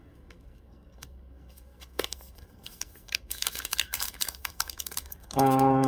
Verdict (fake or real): fake